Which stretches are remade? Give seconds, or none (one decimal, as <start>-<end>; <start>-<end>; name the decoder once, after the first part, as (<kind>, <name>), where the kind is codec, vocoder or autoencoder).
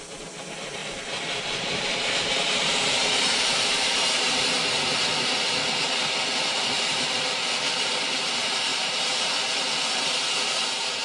0.8-4.3 (vocoder, BigVGAN v2); 8.7-9.3